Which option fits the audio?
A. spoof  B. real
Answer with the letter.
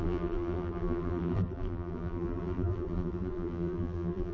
A